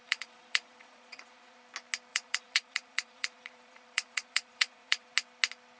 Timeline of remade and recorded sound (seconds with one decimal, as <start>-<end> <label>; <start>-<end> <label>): 0.0-1.6 remade; 1.6-2.1 recorded; 2.1-5.1 remade; 5.1-5.8 recorded